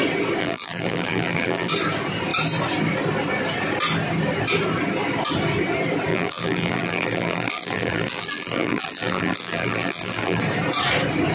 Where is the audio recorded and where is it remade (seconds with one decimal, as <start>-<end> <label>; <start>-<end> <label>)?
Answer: 0.0-0.4 recorded; 0.4-1.7 remade; 1.7-6.1 recorded; 6.1-10.4 remade; 10.4-11.3 recorded